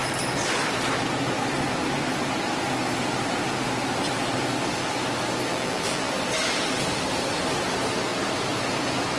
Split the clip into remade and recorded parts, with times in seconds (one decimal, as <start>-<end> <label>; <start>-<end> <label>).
0.0-5.5 recorded; 5.5-6.1 remade; 6.1-9.2 recorded